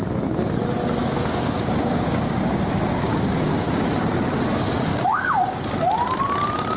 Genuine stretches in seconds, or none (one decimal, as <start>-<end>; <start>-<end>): 0.0-1.0; 3.8-4.9; 5.6-6.8